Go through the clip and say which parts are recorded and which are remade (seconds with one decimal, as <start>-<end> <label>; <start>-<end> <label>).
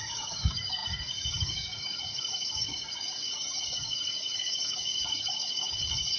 0.0-6.2 remade